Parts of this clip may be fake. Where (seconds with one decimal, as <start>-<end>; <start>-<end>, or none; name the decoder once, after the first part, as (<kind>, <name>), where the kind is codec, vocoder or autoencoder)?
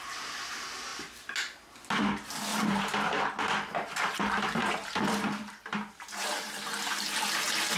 2.5-7.2 (vocoder, BigVGAN v2)